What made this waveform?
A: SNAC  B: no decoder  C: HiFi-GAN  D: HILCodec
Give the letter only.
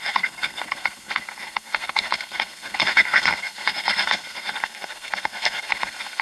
A